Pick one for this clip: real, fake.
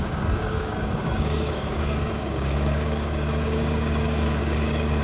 fake